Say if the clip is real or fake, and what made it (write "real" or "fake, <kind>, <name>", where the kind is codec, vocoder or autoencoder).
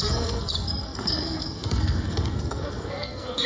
fake, codec, SNAC